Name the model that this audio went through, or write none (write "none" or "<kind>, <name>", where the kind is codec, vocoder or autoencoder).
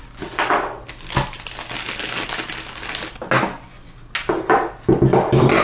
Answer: none